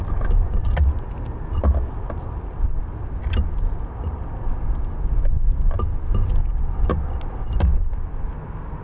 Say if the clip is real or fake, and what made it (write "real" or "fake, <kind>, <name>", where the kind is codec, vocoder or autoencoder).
real